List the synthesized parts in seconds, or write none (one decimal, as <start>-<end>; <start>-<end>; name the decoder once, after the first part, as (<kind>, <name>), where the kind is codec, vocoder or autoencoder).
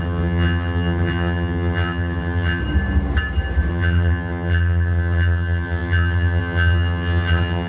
0.0-2.6 (vocoder, HiFi-GAN); 3.7-7.7